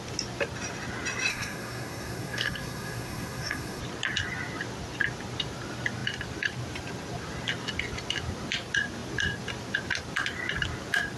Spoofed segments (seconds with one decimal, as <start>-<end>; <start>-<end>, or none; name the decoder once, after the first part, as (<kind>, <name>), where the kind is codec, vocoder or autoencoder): 1.3-3.8 (codec, SNAC)